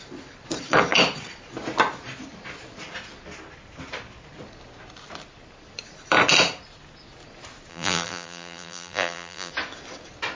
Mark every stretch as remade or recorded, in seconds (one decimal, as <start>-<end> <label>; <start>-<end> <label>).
0.0-7.7 recorded; 7.7-9.5 remade; 9.5-10.3 recorded